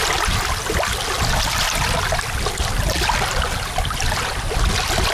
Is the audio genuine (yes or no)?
yes